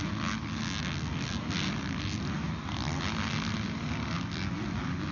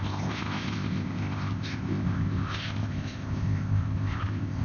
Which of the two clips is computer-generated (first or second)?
second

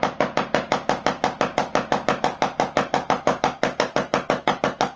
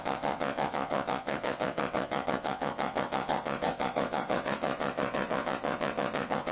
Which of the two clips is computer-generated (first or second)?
second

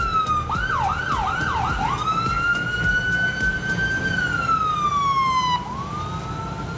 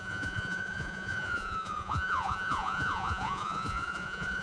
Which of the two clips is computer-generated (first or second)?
second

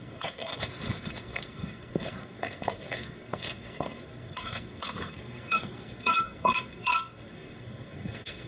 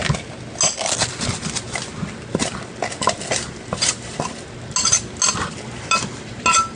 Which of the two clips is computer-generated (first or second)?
first